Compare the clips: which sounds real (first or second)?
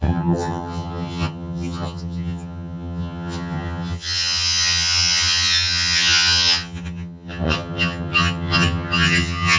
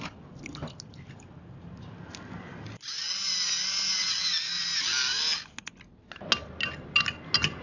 second